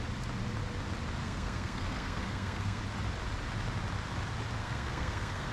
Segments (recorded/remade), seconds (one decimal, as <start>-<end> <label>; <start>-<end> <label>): 0.0-1.2 recorded; 1.2-2.8 remade; 2.8-4.6 recorded; 4.6-5.5 remade